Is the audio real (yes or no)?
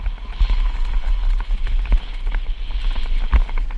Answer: yes